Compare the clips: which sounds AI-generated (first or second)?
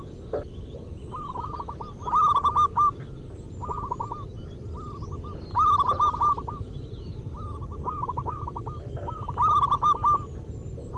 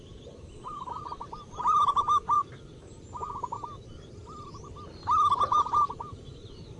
second